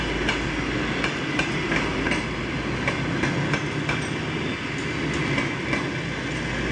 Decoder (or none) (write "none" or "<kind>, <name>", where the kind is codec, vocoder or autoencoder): none